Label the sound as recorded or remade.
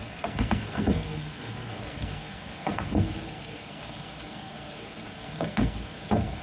remade